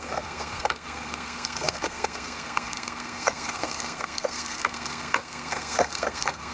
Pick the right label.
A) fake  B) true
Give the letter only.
A